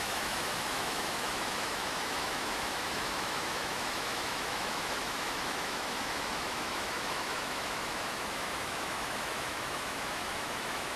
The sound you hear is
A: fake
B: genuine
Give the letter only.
A